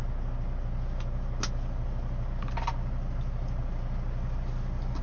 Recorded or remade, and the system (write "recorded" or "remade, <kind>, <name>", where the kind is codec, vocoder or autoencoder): recorded